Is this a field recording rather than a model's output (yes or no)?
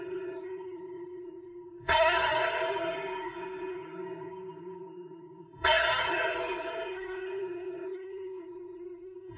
no